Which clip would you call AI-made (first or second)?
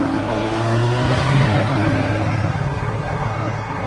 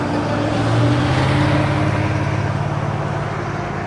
first